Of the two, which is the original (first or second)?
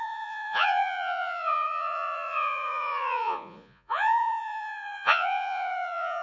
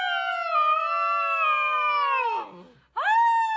second